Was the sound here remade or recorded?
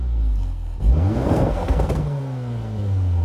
remade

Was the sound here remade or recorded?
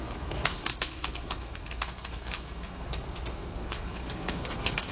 remade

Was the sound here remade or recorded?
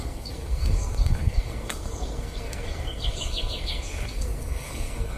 remade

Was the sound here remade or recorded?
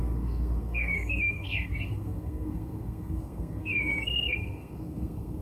remade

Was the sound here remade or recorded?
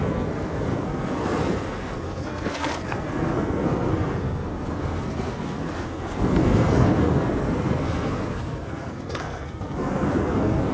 remade